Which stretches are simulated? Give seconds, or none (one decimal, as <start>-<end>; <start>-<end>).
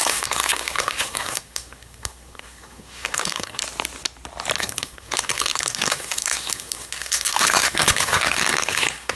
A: 0.0-3.6; 4.6-9.2